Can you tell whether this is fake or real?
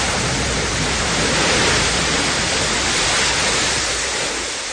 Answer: real